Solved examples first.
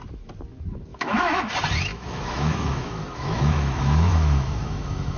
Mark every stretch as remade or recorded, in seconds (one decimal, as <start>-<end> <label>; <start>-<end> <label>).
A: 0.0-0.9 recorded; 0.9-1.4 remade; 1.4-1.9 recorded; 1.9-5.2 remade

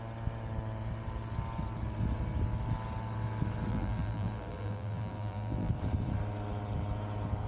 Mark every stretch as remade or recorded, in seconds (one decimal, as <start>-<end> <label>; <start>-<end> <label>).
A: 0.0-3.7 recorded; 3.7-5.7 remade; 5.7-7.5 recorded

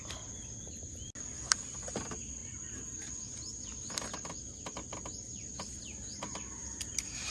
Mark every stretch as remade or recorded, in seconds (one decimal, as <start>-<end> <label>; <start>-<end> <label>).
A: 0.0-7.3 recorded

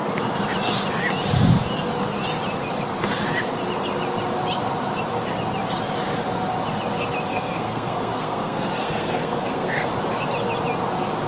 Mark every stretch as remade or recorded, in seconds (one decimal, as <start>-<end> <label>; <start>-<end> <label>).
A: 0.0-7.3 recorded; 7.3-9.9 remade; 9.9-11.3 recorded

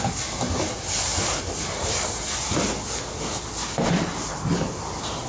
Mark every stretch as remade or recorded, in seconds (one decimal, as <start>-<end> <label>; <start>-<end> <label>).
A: 0.0-5.3 recorded

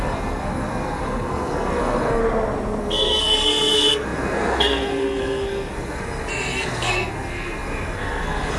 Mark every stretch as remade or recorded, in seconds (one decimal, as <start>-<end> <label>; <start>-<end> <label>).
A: 0.0-2.2 remade; 2.2-2.8 recorded; 2.8-8.6 remade

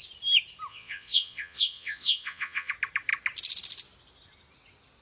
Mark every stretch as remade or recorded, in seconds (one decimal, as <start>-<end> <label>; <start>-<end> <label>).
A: 0.0-0.7 recorded; 0.7-2.7 remade; 2.7-5.0 recorded

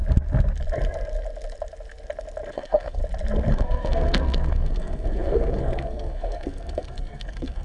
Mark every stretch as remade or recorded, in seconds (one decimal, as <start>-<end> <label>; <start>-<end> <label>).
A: 0.0-2.5 recorded; 2.5-3.0 remade; 3.0-3.5 recorded; 3.5-7.6 remade